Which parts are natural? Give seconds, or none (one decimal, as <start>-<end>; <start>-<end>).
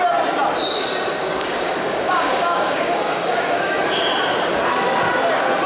0.0-1.2; 4.0-5.7